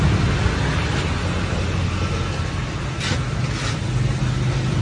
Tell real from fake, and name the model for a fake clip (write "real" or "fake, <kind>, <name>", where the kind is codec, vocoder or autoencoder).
real